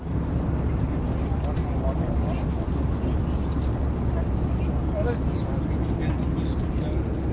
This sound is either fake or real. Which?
real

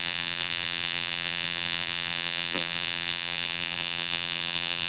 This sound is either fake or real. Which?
fake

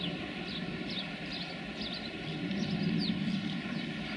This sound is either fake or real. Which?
real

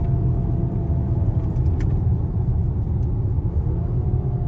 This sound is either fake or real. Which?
real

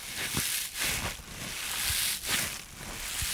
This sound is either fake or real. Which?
real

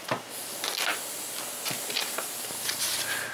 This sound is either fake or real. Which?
real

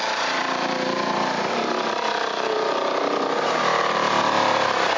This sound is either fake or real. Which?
fake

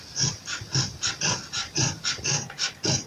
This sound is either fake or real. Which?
fake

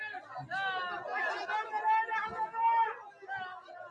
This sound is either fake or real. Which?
real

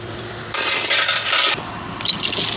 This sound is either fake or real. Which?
fake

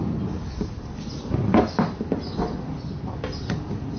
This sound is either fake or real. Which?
real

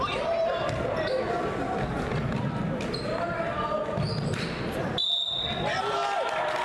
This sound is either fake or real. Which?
fake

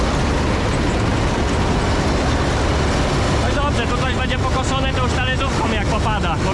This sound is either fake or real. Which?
real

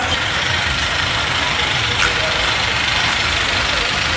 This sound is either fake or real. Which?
fake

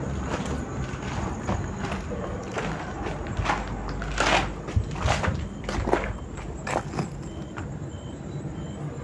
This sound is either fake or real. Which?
real